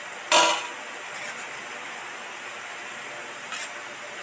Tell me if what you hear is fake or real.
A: real